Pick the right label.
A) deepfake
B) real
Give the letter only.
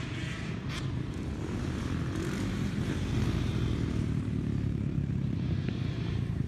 A